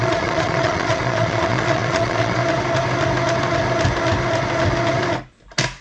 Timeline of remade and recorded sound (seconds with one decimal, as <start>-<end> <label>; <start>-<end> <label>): 0.0-2.4 remade; 2.4-5.8 recorded